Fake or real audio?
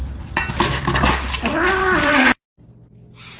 real